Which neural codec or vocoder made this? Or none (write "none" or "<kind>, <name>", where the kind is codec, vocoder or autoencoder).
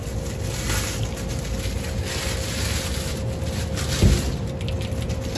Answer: none